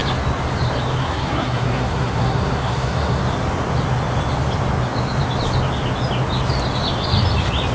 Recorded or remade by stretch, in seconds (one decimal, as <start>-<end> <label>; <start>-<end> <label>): 0.0-1.0 recorded; 1.0-3.2 remade; 3.2-7.7 recorded